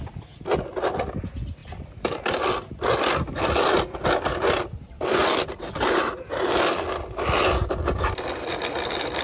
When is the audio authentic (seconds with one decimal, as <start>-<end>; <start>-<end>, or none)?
0.0-9.2